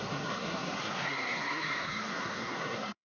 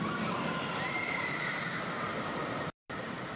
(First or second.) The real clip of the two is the second